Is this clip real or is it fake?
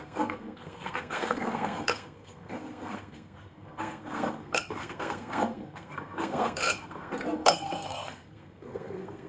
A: fake